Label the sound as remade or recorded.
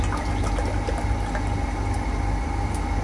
recorded